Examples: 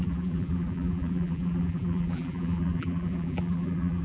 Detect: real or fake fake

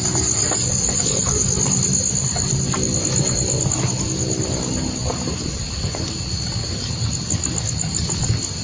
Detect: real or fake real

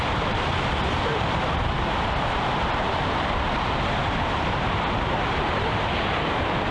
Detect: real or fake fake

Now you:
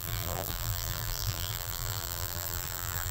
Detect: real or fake fake